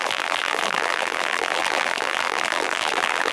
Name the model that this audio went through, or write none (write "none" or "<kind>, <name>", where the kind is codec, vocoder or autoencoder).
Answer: vocoder, BigVGAN v2